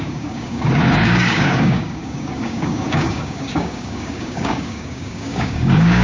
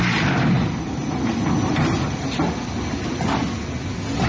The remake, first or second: first